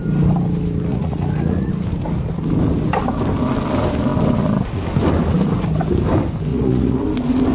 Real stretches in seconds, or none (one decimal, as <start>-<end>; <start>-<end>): 0.0-0.9; 1.7-6.5; 7.0-7.5

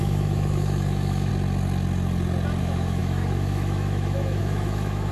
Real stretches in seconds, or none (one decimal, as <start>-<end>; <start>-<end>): 1.3-2.6

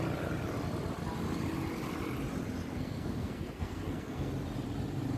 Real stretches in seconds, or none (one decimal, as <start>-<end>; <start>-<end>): 0.0-2.7; 4.3-5.2

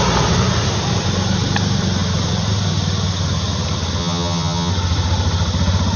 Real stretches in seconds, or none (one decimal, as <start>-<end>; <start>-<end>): 0.0-4.0; 4.7-6.0